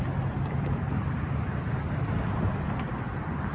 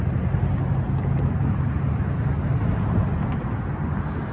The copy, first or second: first